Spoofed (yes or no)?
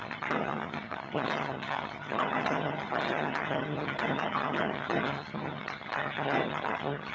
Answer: yes